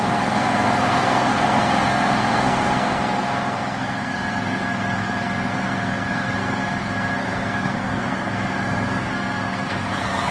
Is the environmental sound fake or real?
fake